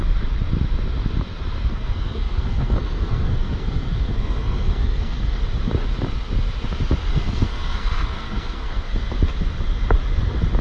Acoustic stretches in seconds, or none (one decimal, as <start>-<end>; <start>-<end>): 0.0-1.7; 5.4-7.1; 9.0-10.6